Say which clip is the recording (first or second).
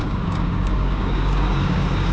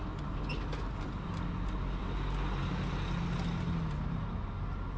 second